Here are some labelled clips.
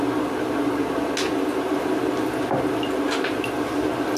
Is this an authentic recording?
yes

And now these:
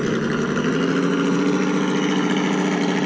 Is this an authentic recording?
yes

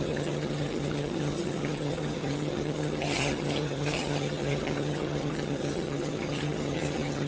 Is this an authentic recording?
no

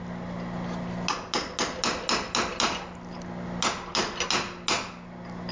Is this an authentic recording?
yes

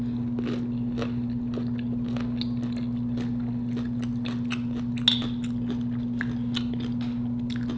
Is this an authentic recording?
yes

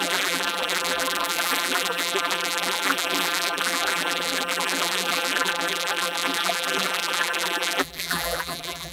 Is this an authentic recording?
no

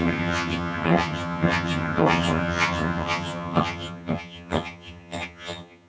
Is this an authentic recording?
no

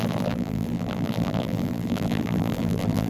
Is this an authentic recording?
no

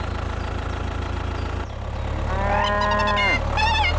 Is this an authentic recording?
yes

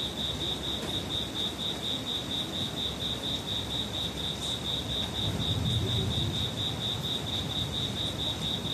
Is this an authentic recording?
yes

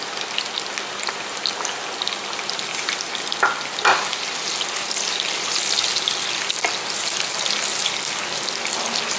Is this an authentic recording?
yes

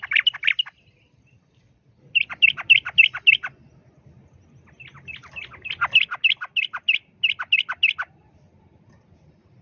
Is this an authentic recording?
yes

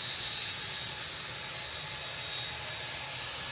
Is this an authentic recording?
yes